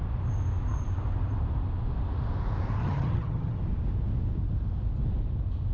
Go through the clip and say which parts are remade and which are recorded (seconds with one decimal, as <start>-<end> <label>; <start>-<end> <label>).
0.0-2.8 recorded; 2.8-3.6 remade; 3.6-5.7 recorded